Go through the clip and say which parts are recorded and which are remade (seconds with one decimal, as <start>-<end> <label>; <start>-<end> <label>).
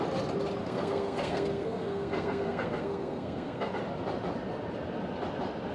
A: 0.0-0.6 recorded; 0.6-3.7 remade; 3.7-5.7 recorded